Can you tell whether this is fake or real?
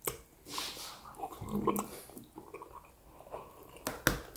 real